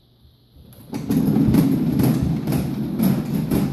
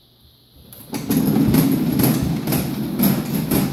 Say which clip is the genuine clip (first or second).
second